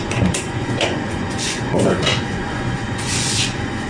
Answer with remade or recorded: remade